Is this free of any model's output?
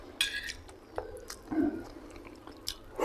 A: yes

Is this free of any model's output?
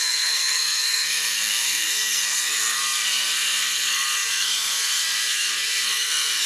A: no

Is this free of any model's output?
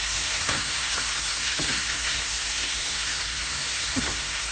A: no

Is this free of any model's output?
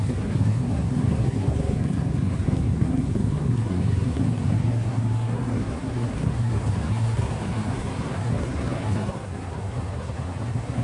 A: no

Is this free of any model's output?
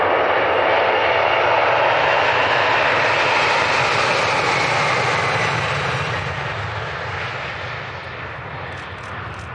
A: yes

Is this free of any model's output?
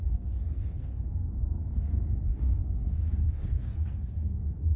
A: no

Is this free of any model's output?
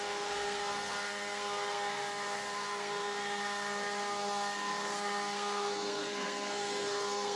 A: no